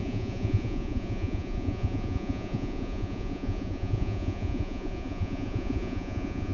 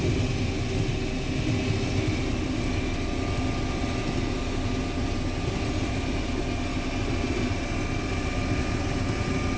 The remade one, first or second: first